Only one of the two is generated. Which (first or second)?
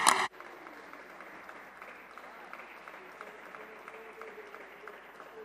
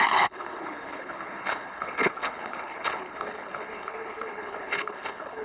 second